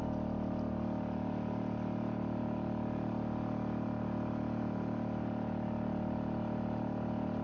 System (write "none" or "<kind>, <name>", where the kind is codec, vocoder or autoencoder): none